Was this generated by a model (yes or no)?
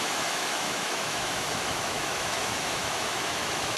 yes